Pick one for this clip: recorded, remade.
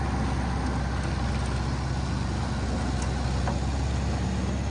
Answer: recorded